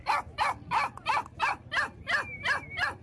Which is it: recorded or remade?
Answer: recorded